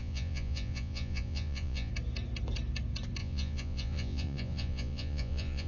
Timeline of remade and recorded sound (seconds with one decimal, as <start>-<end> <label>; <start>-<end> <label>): 0.0-1.9 remade; 1.9-3.2 recorded; 3.2-5.7 remade